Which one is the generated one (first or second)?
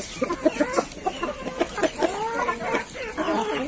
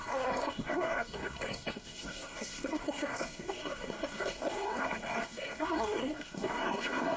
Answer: second